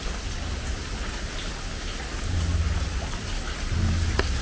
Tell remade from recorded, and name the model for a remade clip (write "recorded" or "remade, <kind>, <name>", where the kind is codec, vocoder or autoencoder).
recorded